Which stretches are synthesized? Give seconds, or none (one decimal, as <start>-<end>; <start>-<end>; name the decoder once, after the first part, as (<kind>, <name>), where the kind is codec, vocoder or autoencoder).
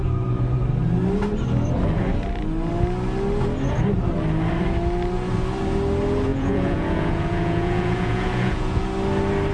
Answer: 6.3-8.8 (vocoder, Vocos)